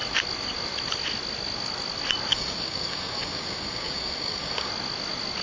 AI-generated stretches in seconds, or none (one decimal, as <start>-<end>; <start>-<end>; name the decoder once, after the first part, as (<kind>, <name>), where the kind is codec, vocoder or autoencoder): 2.3-4.7 (codec, DAC)